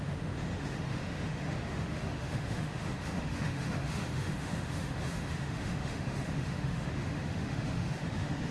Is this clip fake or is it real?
fake